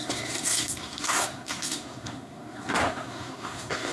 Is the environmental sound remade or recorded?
remade